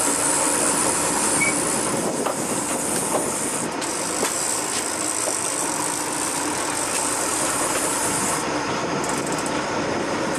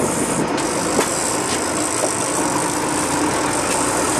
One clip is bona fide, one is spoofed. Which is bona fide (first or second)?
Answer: second